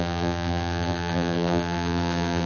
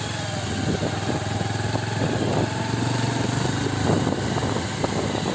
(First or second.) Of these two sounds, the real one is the second